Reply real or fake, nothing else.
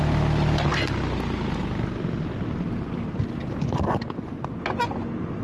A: real